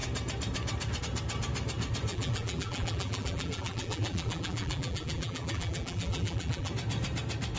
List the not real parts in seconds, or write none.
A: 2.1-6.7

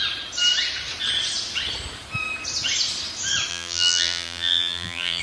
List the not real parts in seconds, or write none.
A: 3.5-5.2

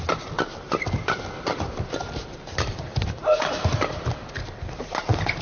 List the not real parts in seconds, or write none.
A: 1.5-4.3